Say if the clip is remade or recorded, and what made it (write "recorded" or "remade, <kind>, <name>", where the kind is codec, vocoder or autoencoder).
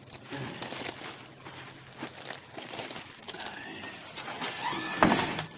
recorded